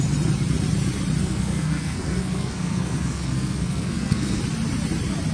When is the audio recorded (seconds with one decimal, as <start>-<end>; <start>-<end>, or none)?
0.0-1.2; 4.4-5.3